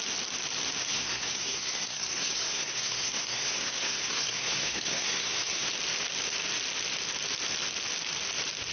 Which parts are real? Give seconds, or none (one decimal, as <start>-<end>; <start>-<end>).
0.0-0.8; 5.7-8.7